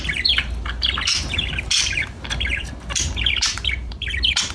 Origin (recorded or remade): remade